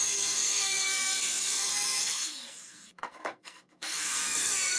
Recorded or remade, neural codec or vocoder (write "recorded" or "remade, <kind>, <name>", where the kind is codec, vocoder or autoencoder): remade, codec, SNAC